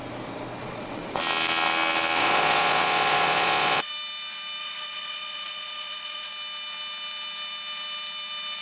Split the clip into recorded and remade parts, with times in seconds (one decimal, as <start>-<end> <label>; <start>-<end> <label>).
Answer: 0.0-0.6 recorded; 0.6-1.2 remade; 1.2-2.2 recorded; 2.2-3.9 remade; 3.9-4.6 recorded; 4.6-6.3 remade; 6.3-8.6 recorded